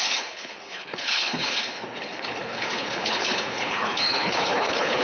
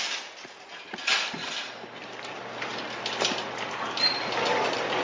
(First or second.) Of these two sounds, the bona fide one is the second